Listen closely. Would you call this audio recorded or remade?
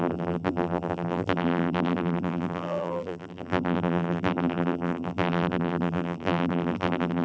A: remade